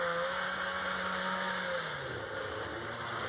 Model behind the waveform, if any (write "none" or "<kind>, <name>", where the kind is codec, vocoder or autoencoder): none